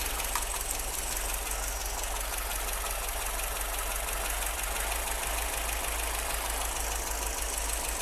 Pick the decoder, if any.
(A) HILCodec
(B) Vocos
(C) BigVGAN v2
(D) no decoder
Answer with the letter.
D